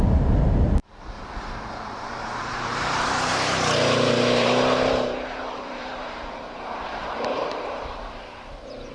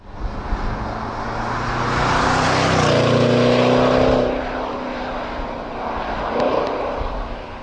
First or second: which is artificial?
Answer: first